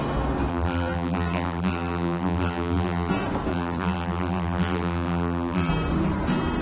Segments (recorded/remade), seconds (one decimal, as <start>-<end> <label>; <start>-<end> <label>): 0.0-0.5 recorded; 0.5-3.1 remade; 3.1-3.5 recorded; 3.5-5.7 remade; 5.7-6.6 recorded